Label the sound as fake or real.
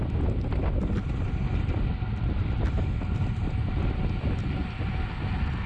real